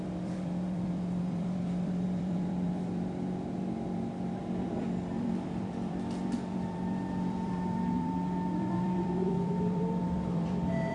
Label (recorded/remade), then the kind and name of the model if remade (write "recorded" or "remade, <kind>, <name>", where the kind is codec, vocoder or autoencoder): remade, vocoder, BigVGAN v2